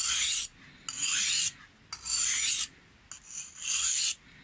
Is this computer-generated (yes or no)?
no